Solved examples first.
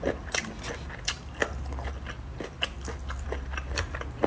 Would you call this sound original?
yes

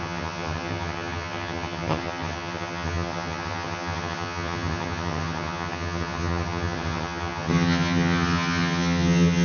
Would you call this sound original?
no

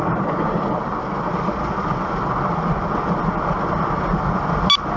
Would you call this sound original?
yes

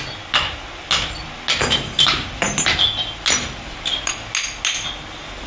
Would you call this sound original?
yes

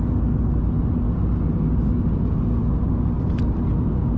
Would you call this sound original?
yes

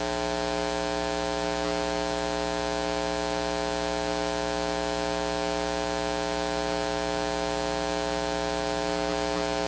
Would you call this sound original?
yes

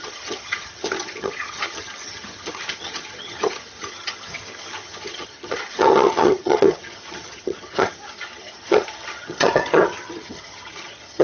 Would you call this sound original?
no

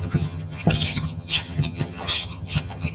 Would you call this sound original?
no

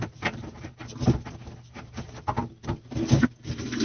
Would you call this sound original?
yes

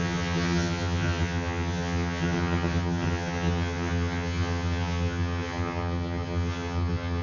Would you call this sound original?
no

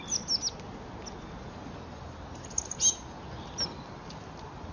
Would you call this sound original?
yes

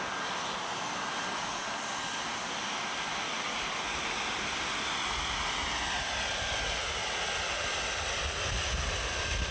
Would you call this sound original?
yes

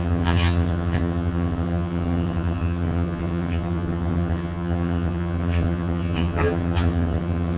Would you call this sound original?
no